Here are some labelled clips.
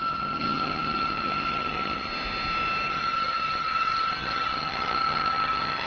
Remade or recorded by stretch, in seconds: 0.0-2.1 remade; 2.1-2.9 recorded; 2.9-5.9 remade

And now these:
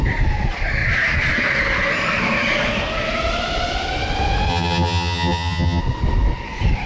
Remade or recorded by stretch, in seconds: 0.0-4.5 recorded; 4.5-5.8 remade; 5.8-6.9 recorded

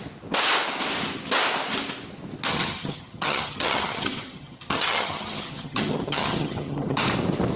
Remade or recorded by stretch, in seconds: 0.0-2.5 recorded; 2.5-7.0 remade; 7.0-7.6 recorded

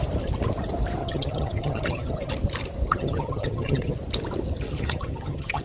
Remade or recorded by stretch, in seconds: 0.0-1.0 recorded; 1.0-2.3 remade; 2.3-2.9 recorded; 2.9-3.9 remade; 3.9-4.7 recorded; 4.7-5.6 remade

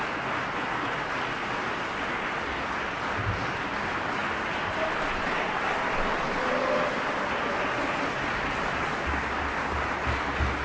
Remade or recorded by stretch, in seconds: 0.0-10.6 recorded

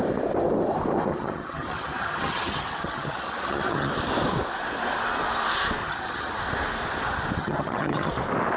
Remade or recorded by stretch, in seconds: 0.0-1.1 recorded; 1.1-3.9 remade; 3.9-5.8 recorded; 5.8-6.4 remade; 6.4-7.4 recorded; 7.4-8.1 remade; 8.1-8.6 recorded